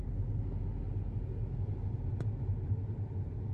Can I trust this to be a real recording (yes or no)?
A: yes